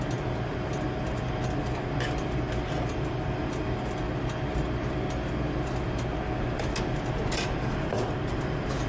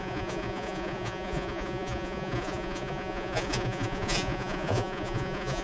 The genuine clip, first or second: first